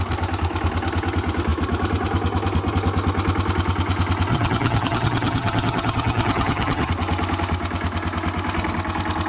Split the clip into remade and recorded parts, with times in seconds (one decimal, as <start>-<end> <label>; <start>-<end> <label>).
0.0-4.3 recorded; 4.3-6.9 remade; 6.9-9.3 recorded